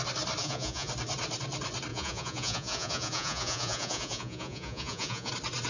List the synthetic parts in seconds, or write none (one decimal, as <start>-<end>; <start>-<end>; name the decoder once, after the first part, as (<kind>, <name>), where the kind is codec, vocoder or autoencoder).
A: 0.4-0.9 (vocoder, Vocos); 1.9-5.3